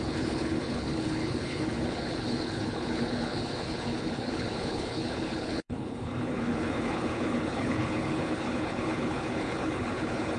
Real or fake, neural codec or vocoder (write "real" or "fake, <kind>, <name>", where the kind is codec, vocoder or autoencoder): fake, codec, HILCodec